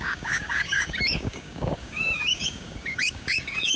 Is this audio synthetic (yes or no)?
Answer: yes